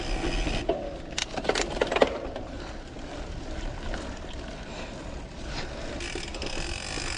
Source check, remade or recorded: recorded